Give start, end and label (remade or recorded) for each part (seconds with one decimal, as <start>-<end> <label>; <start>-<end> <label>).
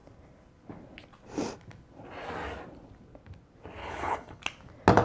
0.0-3.8 recorded; 3.8-4.4 remade; 4.4-5.0 recorded